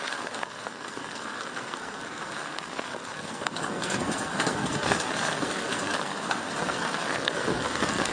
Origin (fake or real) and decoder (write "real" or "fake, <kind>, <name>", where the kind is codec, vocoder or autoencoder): fake, codec, SNAC